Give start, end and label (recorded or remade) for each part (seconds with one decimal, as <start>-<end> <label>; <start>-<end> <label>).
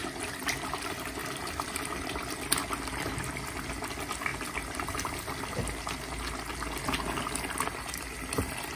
0.0-8.8 recorded